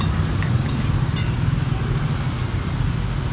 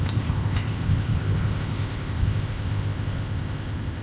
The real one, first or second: first